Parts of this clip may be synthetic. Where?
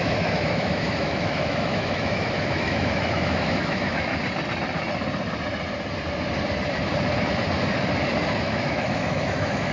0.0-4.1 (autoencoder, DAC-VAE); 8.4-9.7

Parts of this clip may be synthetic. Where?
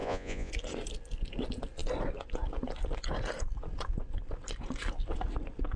0.0-0.5 (vocoder, Vocos)